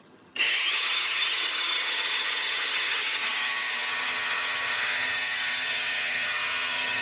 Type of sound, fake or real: fake